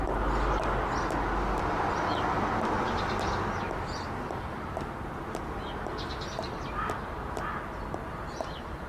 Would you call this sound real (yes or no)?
yes